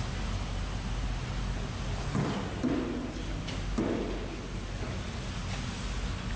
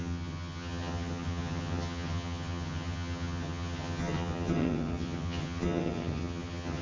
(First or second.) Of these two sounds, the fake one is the second